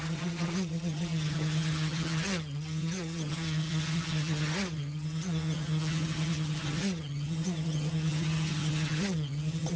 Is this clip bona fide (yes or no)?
no